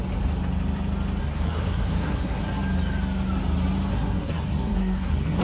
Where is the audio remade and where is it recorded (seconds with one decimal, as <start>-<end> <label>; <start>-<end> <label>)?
0.0-1.2 recorded; 1.2-2.4 remade; 2.4-3.9 recorded; 3.9-5.4 remade